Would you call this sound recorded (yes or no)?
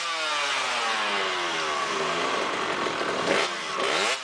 yes